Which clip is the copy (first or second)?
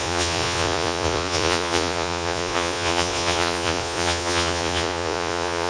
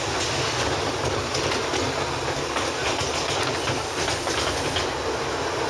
first